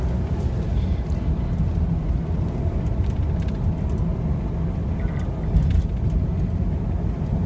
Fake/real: real